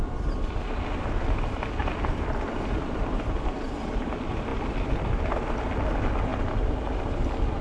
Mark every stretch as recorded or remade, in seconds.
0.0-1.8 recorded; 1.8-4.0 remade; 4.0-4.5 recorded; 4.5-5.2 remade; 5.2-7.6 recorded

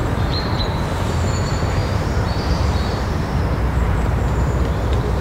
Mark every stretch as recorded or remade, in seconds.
0.0-0.6 remade; 0.6-1.8 recorded; 1.8-5.2 remade